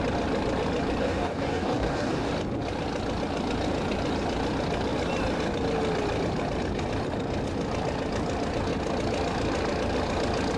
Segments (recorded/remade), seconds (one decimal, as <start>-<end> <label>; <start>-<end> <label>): 0.0-1.0 recorded; 1.0-2.3 remade; 2.3-10.6 recorded